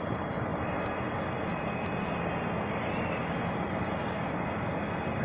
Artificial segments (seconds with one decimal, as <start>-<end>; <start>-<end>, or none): 4.0-4.7